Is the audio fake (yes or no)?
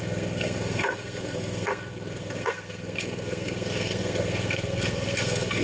yes